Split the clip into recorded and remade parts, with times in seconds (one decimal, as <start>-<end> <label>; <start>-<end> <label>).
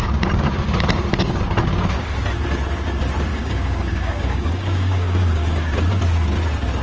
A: 0.0-3.3 recorded; 3.3-5.7 remade; 5.7-6.8 recorded